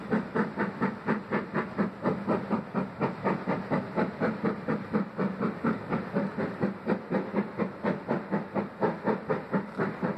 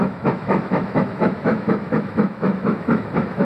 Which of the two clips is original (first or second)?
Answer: first